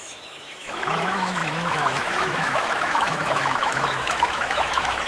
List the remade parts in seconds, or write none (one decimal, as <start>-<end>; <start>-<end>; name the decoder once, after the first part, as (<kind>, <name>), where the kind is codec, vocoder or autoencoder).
0.0-5.1 (autoencoder, DAC-VAE)